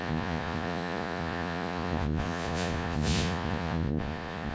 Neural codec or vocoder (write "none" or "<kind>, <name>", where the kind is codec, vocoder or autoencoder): vocoder, Vocos